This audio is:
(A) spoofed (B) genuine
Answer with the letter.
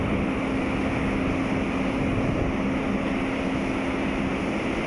B